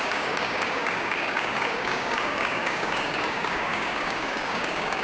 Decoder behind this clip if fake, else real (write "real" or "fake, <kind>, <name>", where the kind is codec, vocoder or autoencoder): fake, codec, DAC